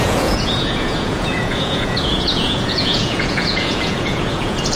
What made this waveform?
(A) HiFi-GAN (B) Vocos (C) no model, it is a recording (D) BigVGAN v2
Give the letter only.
B